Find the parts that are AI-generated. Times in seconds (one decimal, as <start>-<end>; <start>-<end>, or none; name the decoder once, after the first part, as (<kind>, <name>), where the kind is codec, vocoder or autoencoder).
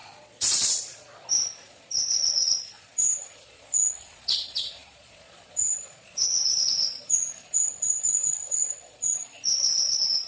0.0-10.3 (vocoder, Vocos)